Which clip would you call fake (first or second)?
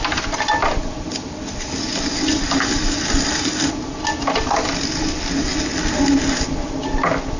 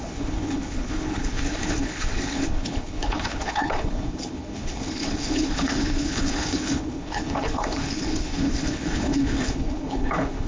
second